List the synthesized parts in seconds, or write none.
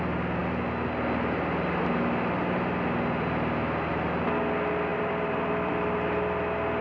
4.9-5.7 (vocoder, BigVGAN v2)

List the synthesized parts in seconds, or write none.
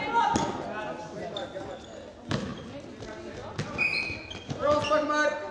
none